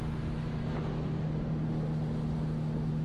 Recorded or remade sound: recorded